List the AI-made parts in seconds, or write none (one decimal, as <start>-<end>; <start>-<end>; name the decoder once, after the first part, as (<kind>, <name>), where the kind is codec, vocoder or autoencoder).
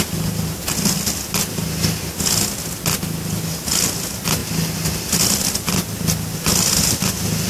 none